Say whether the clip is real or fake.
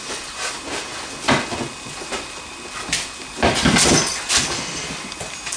real